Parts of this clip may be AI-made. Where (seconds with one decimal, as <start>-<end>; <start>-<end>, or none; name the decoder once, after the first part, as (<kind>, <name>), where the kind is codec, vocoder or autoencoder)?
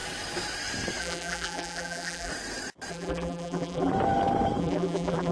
1.0-2.3 (vocoder, BigVGAN v2); 2.9-3.9; 4.6-5.3